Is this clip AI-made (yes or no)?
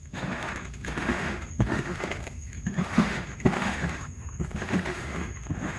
yes